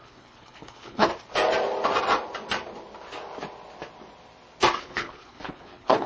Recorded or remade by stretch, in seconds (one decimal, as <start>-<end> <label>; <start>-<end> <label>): 0.0-1.1 remade; 1.1-4.8 recorded; 4.8-6.1 remade